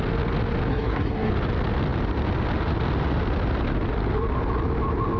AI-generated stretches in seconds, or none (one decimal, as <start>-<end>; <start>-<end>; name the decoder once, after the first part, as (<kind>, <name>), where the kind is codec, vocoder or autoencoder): 0.7-1.3 (codec, SNAC)